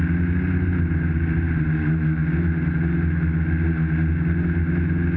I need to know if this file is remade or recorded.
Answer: recorded